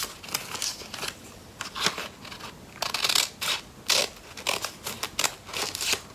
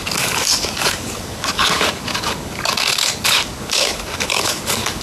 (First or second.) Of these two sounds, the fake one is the second